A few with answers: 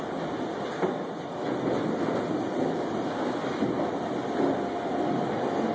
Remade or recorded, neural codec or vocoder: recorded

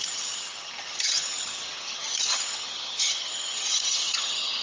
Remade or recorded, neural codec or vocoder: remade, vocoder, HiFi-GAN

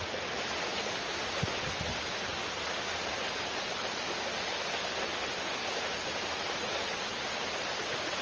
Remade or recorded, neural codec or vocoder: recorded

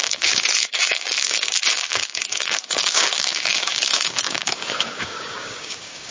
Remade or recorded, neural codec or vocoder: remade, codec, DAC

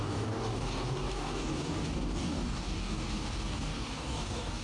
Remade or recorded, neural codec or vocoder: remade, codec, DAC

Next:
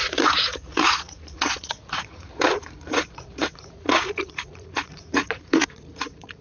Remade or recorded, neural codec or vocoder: remade, vocoder, Vocos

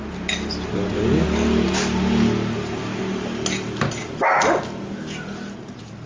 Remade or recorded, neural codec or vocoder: recorded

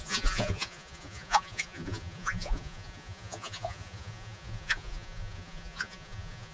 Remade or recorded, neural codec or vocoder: remade, vocoder, Vocos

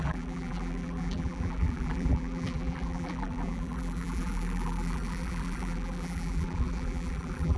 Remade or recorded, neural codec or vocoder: remade, vocoder, BigVGAN v2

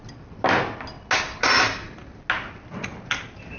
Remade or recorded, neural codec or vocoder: recorded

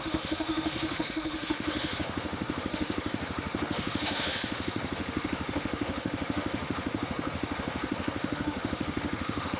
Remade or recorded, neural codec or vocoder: remade, autoencoder, DAC-VAE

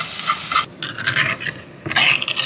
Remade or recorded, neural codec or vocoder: recorded